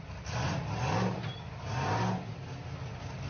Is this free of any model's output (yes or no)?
yes